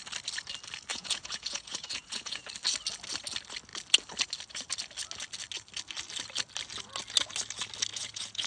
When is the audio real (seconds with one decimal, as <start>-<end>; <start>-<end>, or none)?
0.0-0.9; 2.5-7.9